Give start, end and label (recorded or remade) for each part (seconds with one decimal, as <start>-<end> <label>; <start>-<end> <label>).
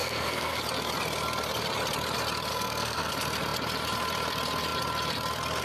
0.0-0.6 remade; 0.6-2.5 recorded; 2.5-3.1 remade; 3.1-5.6 recorded